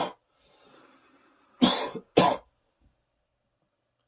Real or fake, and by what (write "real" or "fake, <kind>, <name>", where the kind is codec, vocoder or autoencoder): real